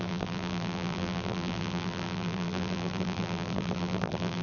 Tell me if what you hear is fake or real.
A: fake